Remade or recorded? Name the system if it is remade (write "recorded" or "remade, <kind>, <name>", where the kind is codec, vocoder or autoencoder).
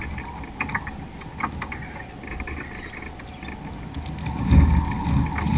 recorded